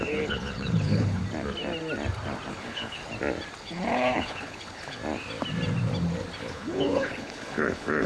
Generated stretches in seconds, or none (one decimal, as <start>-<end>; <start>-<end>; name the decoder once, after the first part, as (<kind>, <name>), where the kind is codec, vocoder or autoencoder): 0.0-1.2 (codec, HILCodec); 2.5-3.0; 3.6-5.0; 6.4-8.1